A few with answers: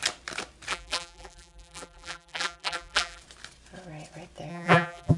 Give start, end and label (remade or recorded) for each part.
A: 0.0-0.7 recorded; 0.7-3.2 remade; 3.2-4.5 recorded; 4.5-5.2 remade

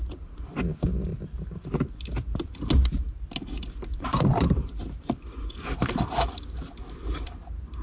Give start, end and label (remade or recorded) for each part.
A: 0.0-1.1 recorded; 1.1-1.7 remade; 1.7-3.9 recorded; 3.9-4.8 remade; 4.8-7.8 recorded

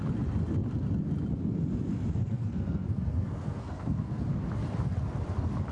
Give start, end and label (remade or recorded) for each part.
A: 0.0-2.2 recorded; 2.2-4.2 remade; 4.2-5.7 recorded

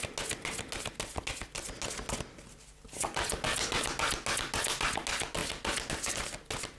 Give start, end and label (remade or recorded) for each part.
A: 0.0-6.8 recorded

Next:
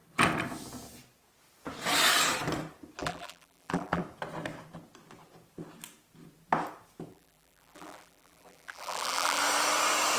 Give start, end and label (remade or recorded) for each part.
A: 0.0-3.0 recorded; 3.0-4.0 remade; 4.0-7.1 recorded; 7.1-9.4 remade; 9.4-10.2 recorded

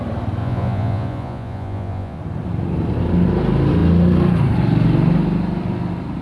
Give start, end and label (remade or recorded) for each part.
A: 0.0-0.4 recorded; 0.4-2.2 remade; 2.2-6.2 recorded

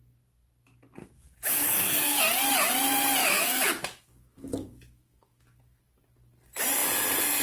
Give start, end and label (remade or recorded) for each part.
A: 0.0-1.0 recorded; 1.0-2.2 remade; 2.2-3.2 recorded; 3.2-5.8 remade; 5.8-7.4 recorded